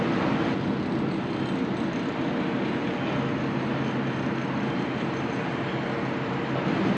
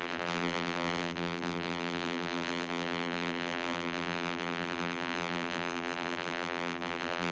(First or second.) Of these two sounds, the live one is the first